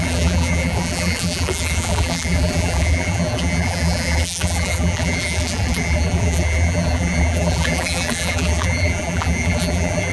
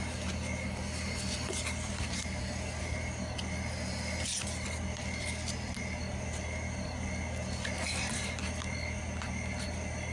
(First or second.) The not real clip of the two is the first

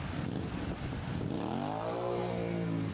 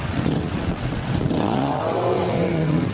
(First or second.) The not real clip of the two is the second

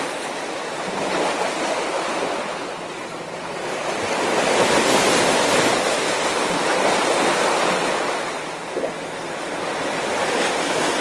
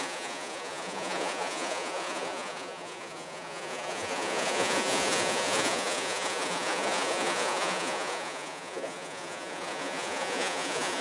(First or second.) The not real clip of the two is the second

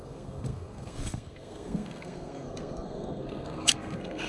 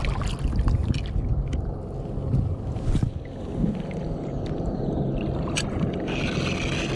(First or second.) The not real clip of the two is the first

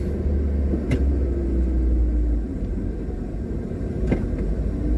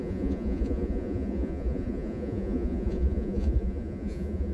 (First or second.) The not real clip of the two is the second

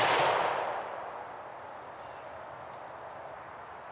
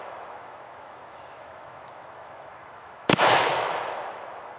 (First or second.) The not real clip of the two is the second